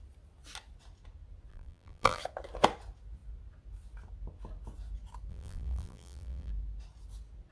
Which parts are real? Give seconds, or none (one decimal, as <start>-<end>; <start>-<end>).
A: 0.0-1.5; 2.2-5.3; 6.5-7.5